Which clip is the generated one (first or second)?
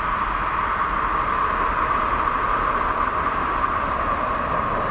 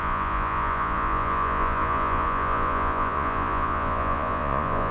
second